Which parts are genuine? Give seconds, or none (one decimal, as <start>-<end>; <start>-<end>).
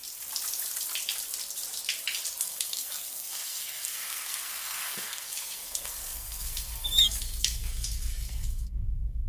0.0-2.4